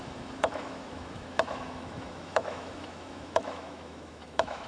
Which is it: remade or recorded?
remade